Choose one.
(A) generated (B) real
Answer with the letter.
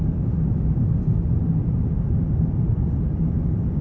B